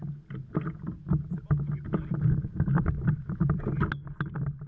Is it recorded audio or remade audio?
recorded